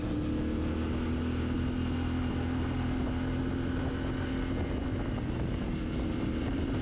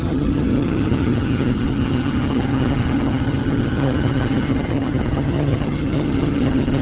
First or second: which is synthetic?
second